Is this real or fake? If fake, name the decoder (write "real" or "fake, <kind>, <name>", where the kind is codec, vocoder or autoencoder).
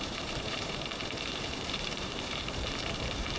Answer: fake, vocoder, BigVGAN v2